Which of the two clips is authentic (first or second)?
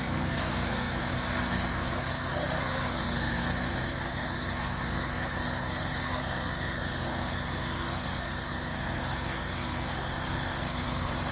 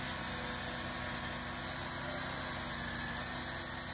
second